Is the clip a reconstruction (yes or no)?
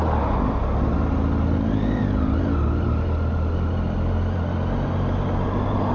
no